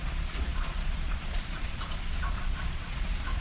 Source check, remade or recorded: remade